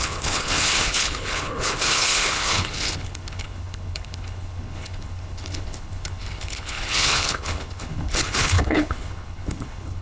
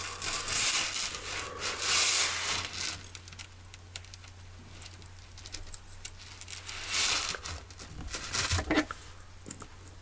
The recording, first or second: second